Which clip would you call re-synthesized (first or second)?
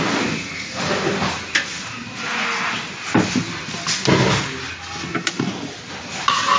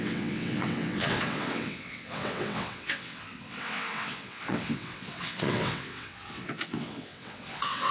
second